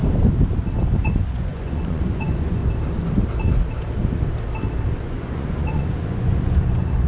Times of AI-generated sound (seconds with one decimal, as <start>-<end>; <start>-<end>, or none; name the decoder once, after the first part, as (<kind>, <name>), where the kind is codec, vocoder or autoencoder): 1.0-2.6 (vocoder, Vocos); 5.0-7.1